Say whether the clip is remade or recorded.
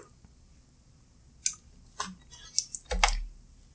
recorded